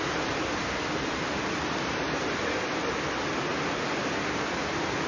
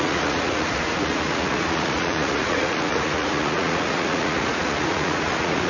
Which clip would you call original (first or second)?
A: first